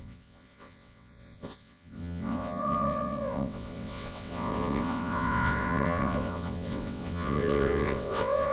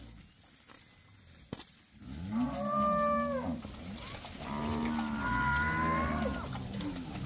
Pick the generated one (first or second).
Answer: first